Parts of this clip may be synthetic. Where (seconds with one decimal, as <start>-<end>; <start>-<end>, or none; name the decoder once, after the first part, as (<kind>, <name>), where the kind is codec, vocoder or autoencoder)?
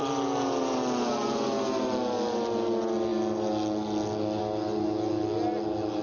0.0-1.1 (vocoder, BigVGAN v2)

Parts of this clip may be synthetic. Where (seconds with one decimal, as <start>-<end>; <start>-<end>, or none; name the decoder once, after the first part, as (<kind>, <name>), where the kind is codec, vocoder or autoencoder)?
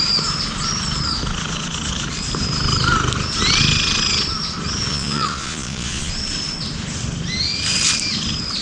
4.9-6.1 (vocoder, Vocos)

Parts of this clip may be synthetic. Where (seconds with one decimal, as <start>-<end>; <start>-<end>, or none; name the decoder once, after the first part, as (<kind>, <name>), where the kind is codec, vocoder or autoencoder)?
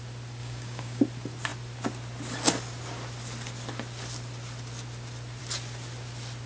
0.4-1.0 (codec, DAC)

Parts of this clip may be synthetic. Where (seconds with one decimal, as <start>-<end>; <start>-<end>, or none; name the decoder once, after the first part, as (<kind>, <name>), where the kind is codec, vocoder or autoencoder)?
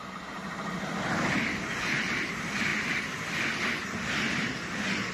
0.0-0.4 (vocoder, BigVGAN v2); 1.8-2.7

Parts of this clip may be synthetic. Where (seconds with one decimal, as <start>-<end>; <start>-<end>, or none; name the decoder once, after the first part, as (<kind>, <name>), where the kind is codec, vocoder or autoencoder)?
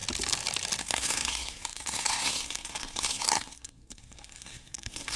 0.8-5.2 (codec, SNAC)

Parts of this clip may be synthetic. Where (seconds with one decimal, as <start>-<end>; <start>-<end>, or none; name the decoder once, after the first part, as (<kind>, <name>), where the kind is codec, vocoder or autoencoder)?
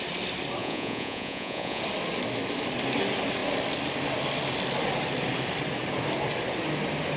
0.6-1.8 (vocoder, Vocos)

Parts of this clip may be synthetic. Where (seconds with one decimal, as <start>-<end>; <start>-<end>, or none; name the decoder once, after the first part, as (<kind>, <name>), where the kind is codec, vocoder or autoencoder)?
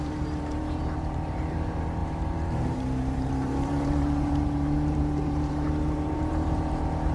0.0-7.1 (vocoder, BigVGAN v2)